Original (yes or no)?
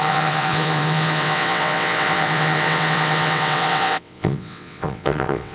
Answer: no